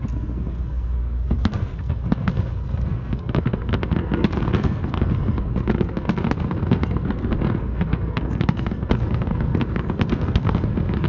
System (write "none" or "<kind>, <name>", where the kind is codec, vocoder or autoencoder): codec, SNAC